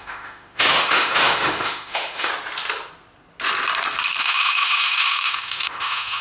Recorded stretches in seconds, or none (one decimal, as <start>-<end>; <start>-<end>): 2.3-4.2